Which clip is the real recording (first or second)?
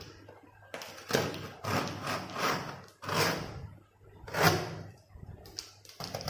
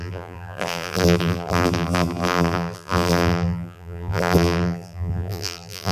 first